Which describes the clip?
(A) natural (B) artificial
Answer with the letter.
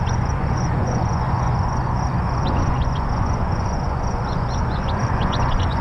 B